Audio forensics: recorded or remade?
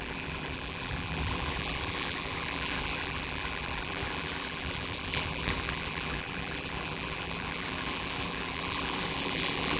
remade